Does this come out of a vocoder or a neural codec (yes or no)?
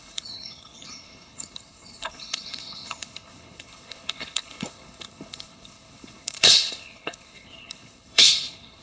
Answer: yes